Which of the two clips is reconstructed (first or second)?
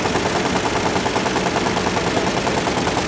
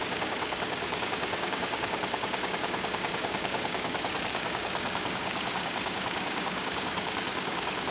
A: second